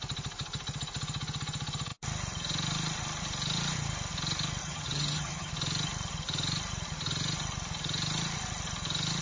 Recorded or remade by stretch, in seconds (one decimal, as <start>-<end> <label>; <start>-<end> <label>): 0.0-4.6 recorded; 4.6-5.5 remade; 5.5-9.2 recorded